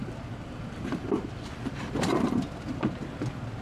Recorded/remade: recorded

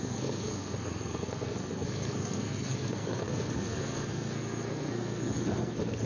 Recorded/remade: remade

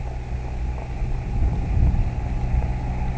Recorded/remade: recorded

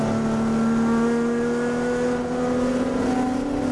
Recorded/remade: recorded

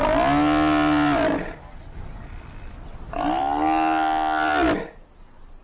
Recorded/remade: recorded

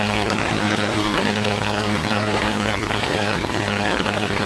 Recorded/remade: remade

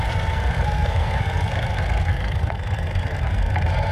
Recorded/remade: remade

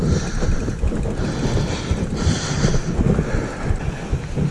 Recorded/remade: recorded